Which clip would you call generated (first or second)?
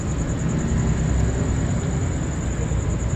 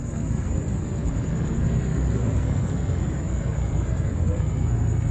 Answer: second